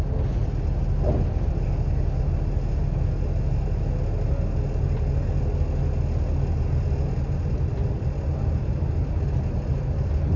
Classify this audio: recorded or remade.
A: recorded